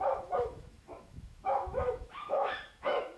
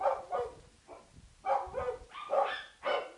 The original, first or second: second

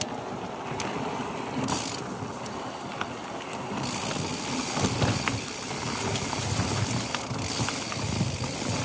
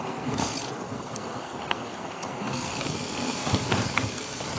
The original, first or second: first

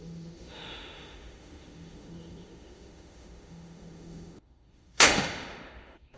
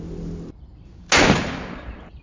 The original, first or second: second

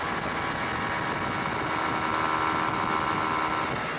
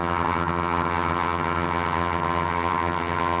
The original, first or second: first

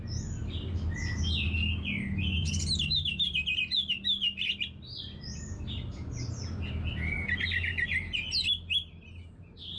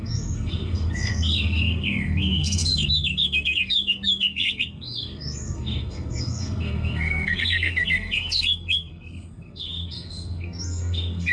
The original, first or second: first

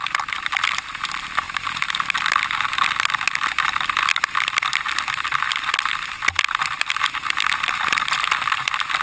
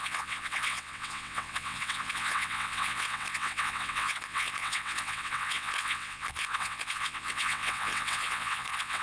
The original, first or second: first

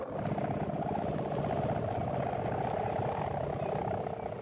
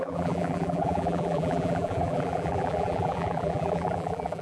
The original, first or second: first